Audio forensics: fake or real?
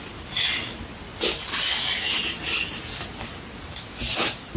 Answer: real